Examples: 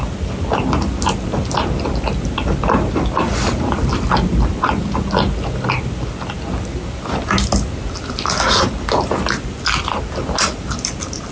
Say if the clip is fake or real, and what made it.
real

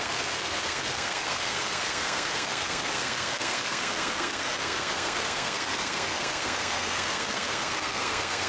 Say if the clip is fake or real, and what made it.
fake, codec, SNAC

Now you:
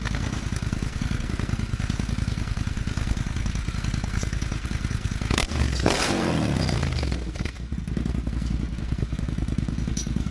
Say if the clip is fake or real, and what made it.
fake, codec, SNAC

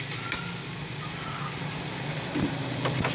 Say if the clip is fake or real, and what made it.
real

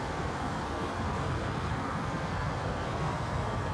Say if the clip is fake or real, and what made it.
fake, codec, SNAC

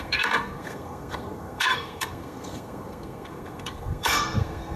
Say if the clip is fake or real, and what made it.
fake, codec, SNAC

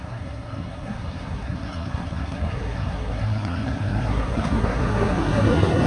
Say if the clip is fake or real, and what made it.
fake, codec, SNAC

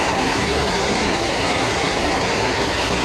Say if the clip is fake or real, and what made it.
fake, codec, SNAC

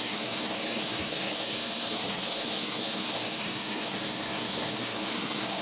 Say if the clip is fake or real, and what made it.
fake, codec, SNAC